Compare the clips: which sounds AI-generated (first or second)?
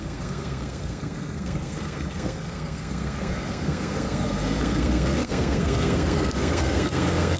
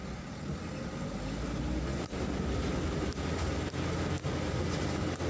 first